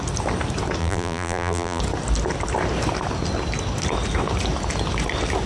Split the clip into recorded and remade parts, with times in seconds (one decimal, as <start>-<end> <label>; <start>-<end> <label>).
0.0-0.8 recorded; 0.8-1.8 remade; 1.8-5.5 recorded